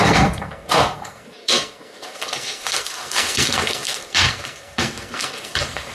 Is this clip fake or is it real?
fake